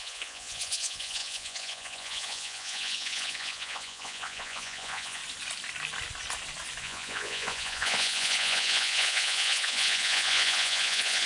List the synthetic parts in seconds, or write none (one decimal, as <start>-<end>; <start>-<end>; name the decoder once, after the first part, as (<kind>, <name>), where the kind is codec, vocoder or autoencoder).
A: 0.0-5.2 (vocoder, Vocos); 6.8-11.3